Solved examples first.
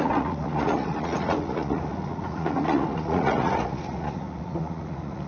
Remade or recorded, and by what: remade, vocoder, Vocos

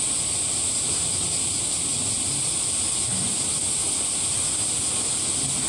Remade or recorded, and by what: recorded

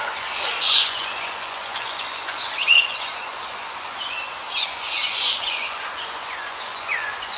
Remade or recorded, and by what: remade, vocoder, Vocos